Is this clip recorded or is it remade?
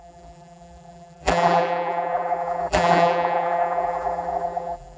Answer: remade